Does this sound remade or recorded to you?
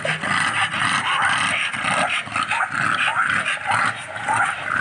recorded